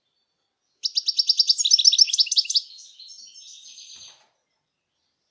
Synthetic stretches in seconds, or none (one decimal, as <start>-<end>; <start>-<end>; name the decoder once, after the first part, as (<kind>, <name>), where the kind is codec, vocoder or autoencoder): none